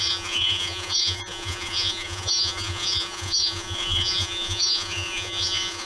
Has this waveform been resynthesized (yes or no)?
yes